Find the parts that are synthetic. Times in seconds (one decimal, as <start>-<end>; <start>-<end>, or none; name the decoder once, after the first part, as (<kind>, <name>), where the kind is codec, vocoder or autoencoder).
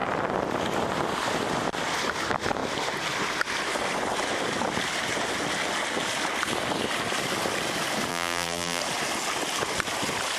8.1-8.8 (vocoder, BigVGAN v2)